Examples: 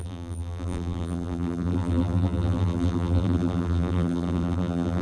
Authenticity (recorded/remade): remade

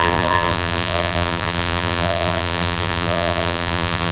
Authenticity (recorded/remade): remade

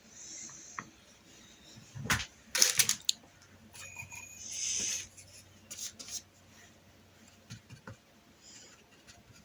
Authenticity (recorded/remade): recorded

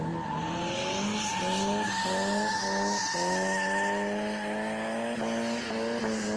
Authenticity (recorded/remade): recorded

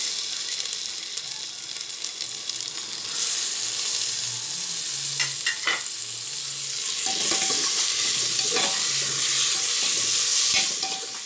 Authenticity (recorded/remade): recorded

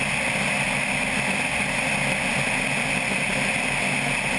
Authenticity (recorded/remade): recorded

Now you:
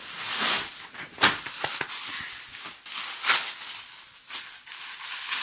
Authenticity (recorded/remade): recorded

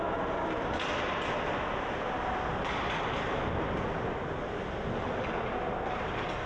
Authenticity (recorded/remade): recorded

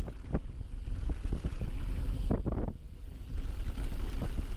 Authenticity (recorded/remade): recorded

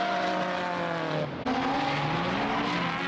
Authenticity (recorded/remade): recorded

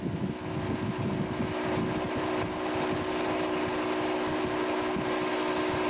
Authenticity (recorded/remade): recorded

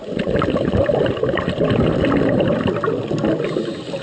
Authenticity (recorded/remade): recorded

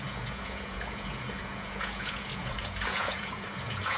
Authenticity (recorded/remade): remade